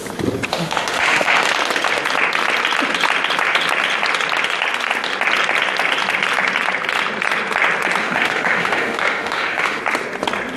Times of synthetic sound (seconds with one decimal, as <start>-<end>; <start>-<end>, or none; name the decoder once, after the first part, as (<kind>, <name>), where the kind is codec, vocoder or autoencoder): 0.5-1.5 (autoencoder, DAC-VAE); 8.0-9.8